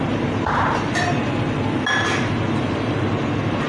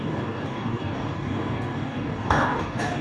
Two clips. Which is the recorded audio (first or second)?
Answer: first